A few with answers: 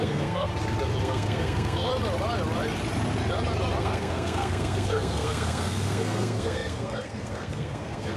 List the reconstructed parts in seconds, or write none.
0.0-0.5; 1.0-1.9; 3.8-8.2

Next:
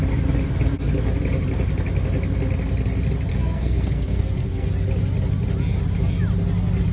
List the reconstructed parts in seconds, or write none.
3.3-4.7

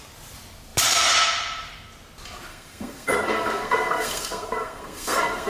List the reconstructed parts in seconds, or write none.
2.5-5.5

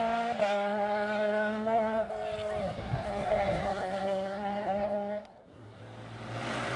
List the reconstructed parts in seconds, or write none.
0.4-2.1; 2.6-5.8

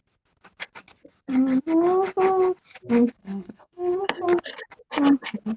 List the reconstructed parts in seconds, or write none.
3.2-4.0